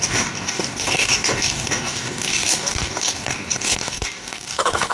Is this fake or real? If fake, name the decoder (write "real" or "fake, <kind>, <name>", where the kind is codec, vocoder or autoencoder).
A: fake, codec, DAC